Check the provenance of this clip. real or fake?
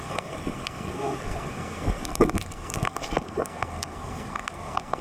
fake